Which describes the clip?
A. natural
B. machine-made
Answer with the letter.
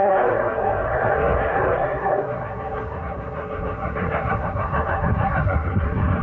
B